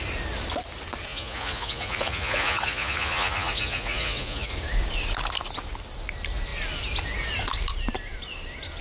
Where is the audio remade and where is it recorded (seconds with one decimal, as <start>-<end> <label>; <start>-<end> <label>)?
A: 0.0-1.1 recorded; 1.1-4.5 remade; 4.5-8.8 recorded